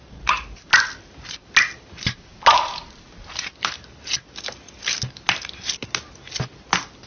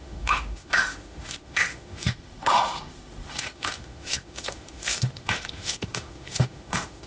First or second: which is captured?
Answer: first